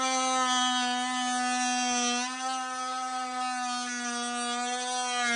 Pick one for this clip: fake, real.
real